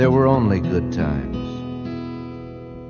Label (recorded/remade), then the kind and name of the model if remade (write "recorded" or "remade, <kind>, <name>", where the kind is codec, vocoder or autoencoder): recorded